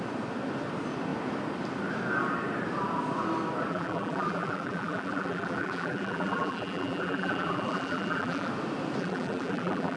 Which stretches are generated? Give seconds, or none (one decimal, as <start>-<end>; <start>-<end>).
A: 3.7-8.5; 9.0-10.0